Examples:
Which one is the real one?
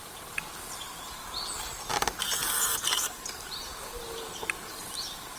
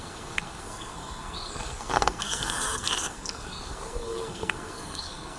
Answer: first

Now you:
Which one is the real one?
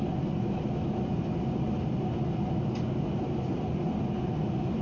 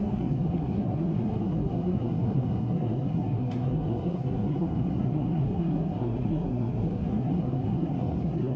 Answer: first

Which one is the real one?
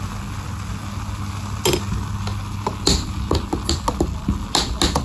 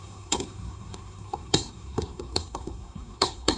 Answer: first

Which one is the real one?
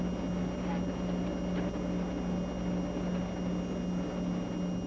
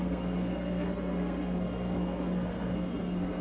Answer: first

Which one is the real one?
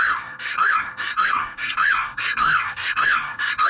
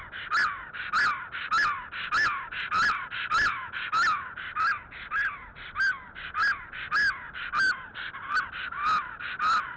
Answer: second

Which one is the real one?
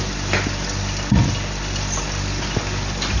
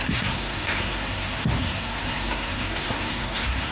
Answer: first